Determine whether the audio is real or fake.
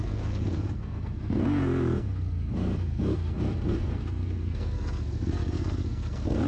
fake